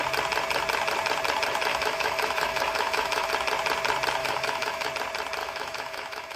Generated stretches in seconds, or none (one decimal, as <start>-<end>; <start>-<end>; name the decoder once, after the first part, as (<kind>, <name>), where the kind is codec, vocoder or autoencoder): 1.7-3.3 (autoencoder, DAC-VAE); 4.2-4.9; 5.4-6.4